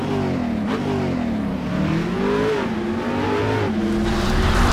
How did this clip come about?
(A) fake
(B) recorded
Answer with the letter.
B